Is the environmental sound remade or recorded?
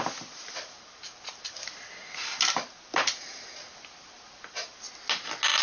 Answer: recorded